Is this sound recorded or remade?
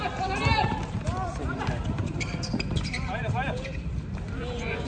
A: remade